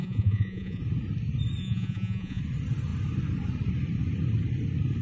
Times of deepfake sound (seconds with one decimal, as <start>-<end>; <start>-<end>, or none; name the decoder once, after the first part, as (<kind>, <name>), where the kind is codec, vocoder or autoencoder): 0.0-0.8 (vocoder, Vocos); 1.6-2.4